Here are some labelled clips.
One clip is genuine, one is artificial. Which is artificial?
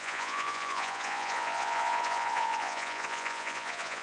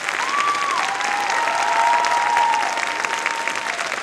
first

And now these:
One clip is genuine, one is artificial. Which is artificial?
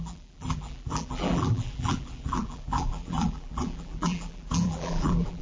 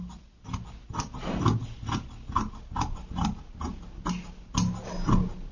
first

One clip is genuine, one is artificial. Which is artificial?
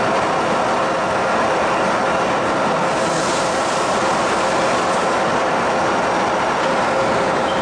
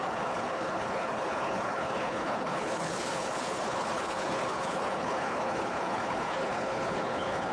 second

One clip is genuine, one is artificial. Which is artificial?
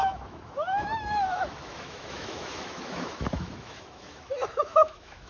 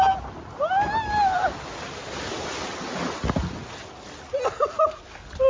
first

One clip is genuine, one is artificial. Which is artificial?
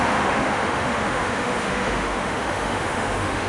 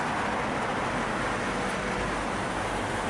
first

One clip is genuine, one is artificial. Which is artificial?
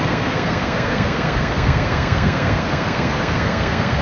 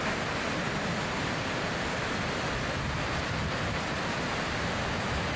first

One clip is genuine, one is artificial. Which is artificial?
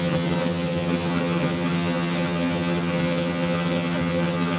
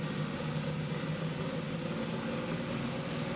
first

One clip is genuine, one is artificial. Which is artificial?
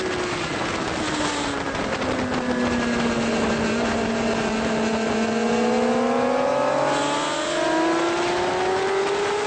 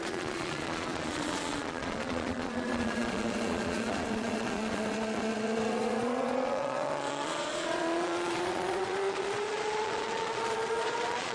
second